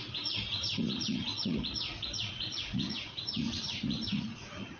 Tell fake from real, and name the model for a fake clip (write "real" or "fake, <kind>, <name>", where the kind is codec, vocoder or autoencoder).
fake, vocoder, Vocos